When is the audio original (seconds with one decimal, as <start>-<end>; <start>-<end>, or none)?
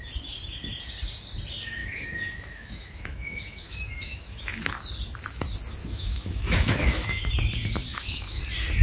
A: 0.0-1.8; 4.7-5.8; 7.3-7.9; 8.4-8.8